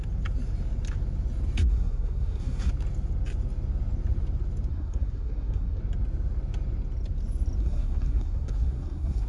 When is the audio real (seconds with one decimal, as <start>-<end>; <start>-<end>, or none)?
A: 0.0-1.6; 2.7-4.7; 5.8-7.6